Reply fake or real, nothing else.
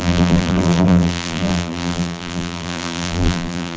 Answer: fake